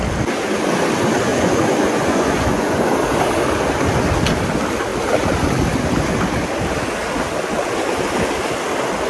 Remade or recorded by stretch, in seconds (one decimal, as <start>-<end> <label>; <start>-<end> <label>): 0.0-1.3 recorded; 1.3-2.9 remade; 2.9-9.1 recorded